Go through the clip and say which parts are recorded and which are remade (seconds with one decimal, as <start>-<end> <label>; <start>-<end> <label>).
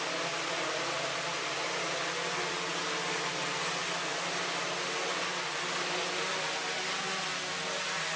0.0-8.2 recorded